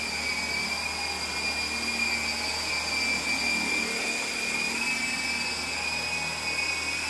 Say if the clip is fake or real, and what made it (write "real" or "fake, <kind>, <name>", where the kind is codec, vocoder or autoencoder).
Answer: real